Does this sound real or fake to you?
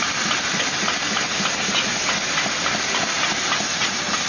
real